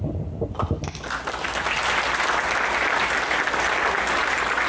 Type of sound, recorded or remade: recorded